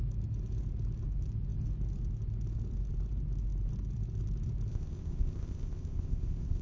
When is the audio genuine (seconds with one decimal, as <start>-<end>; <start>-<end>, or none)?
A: 0.0-4.7